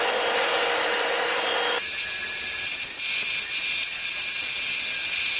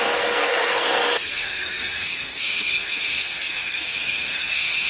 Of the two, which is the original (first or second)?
first